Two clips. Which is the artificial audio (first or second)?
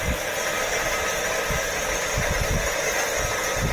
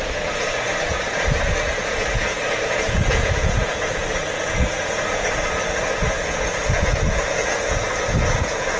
second